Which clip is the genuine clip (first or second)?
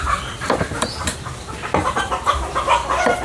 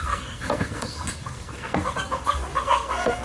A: first